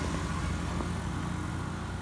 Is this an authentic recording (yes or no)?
yes